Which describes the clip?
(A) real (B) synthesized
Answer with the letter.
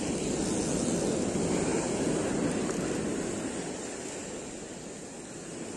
A